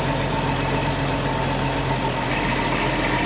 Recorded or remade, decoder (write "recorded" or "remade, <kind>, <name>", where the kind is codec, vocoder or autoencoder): recorded